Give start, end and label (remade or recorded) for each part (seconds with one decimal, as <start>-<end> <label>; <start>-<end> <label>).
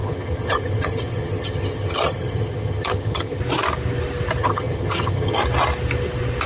0.0-3.4 remade; 3.4-4.4 recorded; 4.4-5.4 remade; 5.4-6.5 recorded